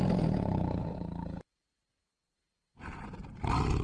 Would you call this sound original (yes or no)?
yes